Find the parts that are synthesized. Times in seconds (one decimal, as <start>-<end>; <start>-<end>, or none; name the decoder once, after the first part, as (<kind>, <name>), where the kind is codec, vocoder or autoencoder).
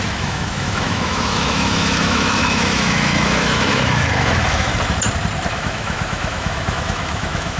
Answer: 0.0-4.7 (autoencoder, DAC-VAE); 5.5-7.6